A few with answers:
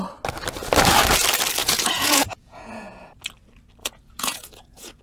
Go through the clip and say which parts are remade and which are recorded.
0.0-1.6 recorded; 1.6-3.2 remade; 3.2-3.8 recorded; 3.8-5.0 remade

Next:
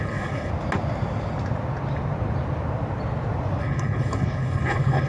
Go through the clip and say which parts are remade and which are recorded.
0.0-0.5 remade; 0.5-3.6 recorded; 3.6-5.1 remade

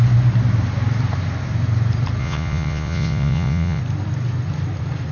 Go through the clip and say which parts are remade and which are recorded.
0.0-2.2 recorded; 2.2-3.8 remade; 3.8-5.1 recorded

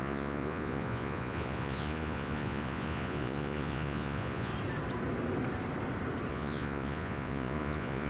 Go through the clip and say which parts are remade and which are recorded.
0.0-4.5 remade; 4.5-6.3 recorded; 6.3-8.1 remade

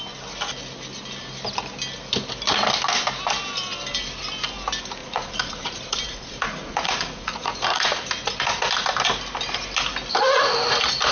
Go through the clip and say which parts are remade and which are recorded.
0.0-5.0 recorded; 5.0-8.1 remade; 8.1-11.1 recorded

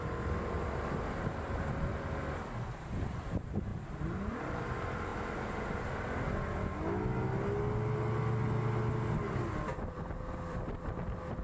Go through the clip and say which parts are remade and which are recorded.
0.0-3.7 remade; 3.7-4.3 recorded; 4.3-5.1 remade; 5.1-9.7 recorded; 9.7-11.4 remade